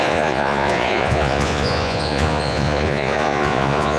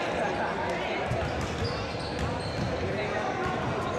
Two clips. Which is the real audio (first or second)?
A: second